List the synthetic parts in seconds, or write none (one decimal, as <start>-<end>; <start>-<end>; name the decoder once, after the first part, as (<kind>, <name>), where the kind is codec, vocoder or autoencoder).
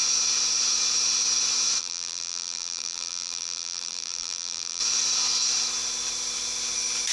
1.8-4.8 (vocoder, BigVGAN v2)